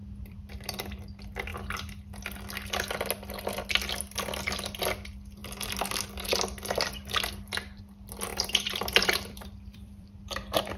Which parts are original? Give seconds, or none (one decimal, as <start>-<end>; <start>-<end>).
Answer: 0.5-8.3; 10.2-10.8